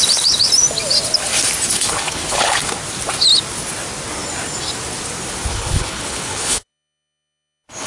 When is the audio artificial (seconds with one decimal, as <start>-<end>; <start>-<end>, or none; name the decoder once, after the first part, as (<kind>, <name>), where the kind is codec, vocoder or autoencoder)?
1.7-2.7 (codec, HILCodec); 5.5-7.9